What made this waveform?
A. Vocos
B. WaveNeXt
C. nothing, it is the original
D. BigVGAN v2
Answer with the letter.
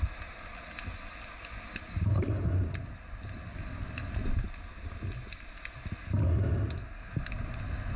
C